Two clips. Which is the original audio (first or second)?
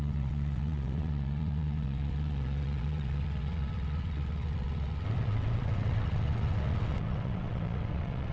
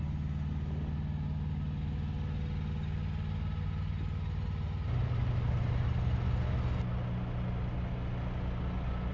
second